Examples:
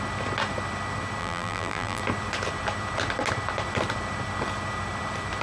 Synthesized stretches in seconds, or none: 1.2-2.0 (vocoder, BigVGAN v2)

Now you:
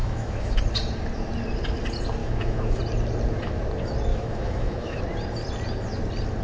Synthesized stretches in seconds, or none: 0.0-0.6 (autoencoder, DAC-VAE); 2.2-2.8; 4.1-5.0